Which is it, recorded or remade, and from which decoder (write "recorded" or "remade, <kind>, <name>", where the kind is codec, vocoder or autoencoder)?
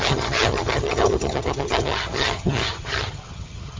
remade, vocoder, HiFi-GAN